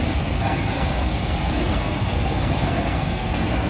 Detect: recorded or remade remade